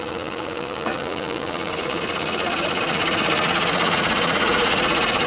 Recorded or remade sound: remade